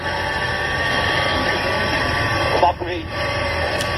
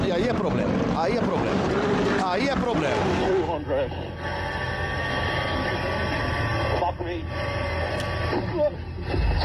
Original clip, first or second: second